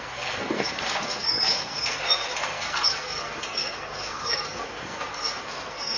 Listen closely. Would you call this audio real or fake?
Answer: fake